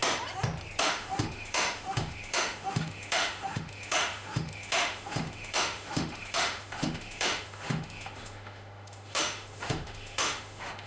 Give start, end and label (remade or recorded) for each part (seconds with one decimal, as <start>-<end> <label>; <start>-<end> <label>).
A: 0.0-0.8 recorded; 0.8-10.9 remade